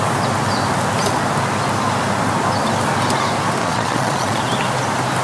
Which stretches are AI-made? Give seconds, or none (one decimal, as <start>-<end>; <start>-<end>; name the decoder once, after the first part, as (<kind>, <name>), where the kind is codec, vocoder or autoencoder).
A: 3.6-4.4 (vocoder, Vocos)